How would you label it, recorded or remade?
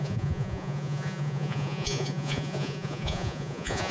remade